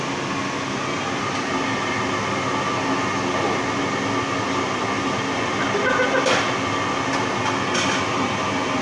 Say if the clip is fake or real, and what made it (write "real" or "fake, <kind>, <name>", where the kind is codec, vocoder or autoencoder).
real